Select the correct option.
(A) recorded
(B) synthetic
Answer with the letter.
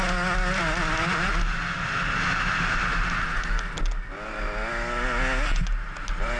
A